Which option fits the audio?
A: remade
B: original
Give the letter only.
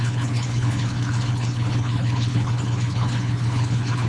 A